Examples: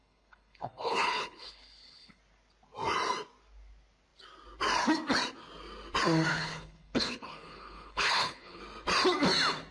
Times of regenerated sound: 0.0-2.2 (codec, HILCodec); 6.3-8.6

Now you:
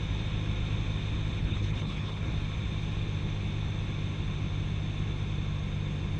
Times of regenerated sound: 1.4-2.3 (codec, HILCodec)

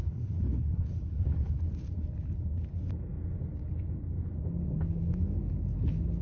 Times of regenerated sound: 0.0-1.6 (codec, HILCodec)

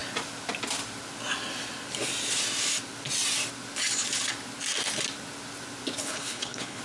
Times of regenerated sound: 6.0-6.8 (codec, HILCodec)

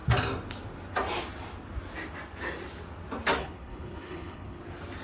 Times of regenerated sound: 3.4-4.6 (codec, HILCodec)